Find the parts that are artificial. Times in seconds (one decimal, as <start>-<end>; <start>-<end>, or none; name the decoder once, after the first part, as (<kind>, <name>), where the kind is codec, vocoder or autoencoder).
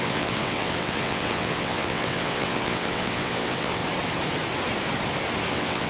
0.0-3.8 (vocoder, WaveNeXt); 5.5-5.9